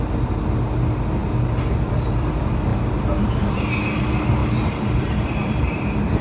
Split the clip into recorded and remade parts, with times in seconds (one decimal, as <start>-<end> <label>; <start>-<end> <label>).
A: 0.0-2.7 recorded; 2.7-3.6 remade; 3.6-4.4 recorded; 4.4-5.6 remade; 5.6-6.2 recorded